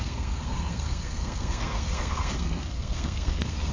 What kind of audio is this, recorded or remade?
remade